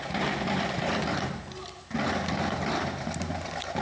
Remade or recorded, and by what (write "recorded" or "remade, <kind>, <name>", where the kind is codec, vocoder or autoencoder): recorded